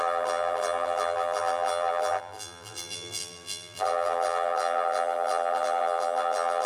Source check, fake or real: fake